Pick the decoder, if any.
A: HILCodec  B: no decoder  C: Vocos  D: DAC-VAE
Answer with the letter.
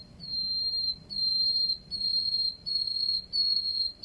B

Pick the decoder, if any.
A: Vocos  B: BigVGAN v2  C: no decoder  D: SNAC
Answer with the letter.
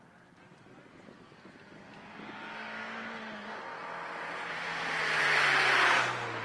C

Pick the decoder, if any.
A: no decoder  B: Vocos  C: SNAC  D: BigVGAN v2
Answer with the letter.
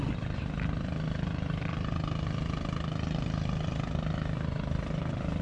A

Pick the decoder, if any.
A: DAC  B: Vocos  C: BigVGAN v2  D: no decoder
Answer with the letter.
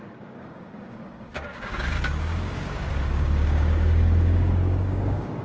A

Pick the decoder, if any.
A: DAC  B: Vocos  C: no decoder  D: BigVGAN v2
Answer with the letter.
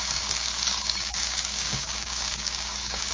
A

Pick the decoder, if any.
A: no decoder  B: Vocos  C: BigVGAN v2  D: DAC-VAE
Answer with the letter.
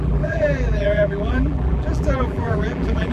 C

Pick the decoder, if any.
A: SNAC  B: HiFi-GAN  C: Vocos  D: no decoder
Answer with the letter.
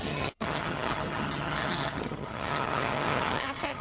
B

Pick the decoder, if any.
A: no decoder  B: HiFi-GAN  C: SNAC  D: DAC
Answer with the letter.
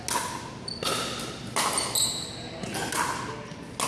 A